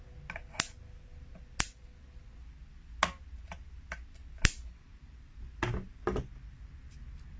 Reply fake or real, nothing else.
real